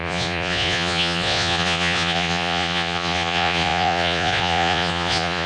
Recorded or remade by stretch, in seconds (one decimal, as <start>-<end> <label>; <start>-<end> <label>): 0.0-5.5 remade